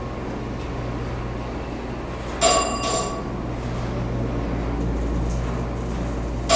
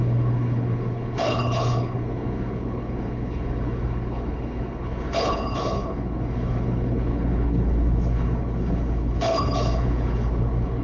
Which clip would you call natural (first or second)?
first